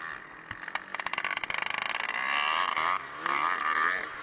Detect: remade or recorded recorded